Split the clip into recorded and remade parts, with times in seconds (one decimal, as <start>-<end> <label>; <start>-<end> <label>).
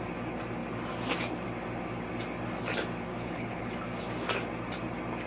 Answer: 0.0-3.1 recorded; 3.1-3.7 remade; 3.7-5.3 recorded